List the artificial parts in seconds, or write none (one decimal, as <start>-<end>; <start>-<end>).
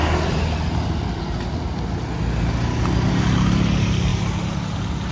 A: none